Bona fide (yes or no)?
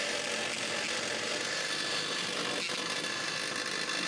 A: yes